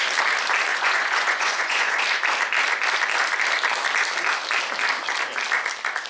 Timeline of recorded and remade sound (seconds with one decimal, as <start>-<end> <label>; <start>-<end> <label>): 0.0-0.7 recorded; 0.7-2.0 remade; 2.0-6.1 recorded